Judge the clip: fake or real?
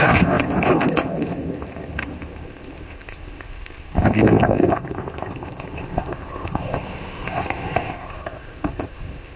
fake